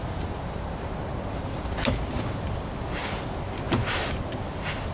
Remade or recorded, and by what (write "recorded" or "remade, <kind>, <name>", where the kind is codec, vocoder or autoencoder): recorded